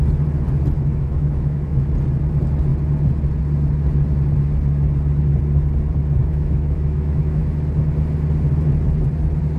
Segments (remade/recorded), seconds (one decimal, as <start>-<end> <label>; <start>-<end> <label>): 0.0-0.9 recorded; 0.9-1.9 remade; 1.9-6.2 recorded; 6.2-7.4 remade; 7.4-9.6 recorded